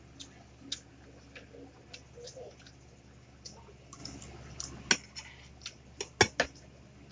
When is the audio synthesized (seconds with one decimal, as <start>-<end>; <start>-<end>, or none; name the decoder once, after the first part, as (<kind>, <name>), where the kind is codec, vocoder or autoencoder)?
none